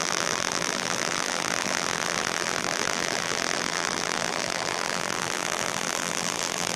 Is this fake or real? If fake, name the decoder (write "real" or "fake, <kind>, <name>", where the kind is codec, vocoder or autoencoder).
fake, vocoder, BigVGAN v2